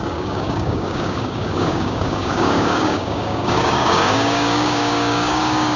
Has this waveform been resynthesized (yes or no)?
yes